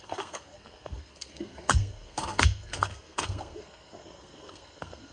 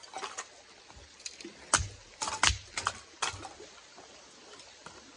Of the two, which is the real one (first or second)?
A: second